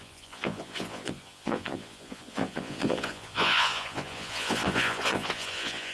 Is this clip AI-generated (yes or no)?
yes